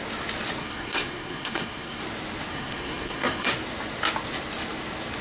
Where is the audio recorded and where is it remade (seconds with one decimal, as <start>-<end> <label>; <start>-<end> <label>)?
0.0-0.6 recorded; 0.6-2.0 remade; 2.0-2.5 recorded; 2.5-3.5 remade; 3.5-5.2 recorded